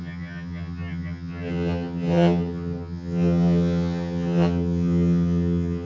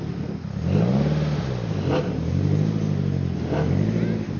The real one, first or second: second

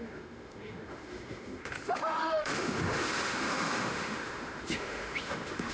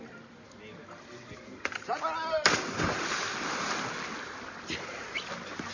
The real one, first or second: second